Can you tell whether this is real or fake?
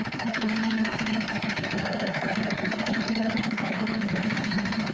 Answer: fake